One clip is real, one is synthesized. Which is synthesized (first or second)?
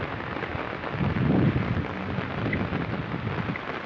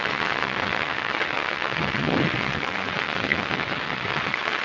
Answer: second